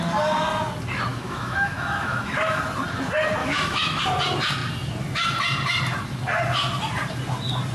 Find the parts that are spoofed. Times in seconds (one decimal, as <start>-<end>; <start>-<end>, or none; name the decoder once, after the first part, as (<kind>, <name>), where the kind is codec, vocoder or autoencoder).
1.1-2.6 (autoencoder, DAC-VAE); 3.4-4.0